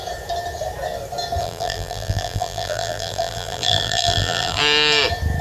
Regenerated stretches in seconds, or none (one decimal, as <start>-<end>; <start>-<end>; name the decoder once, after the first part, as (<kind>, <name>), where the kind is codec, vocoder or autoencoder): 1.4-4.6 (vocoder, BigVGAN v2)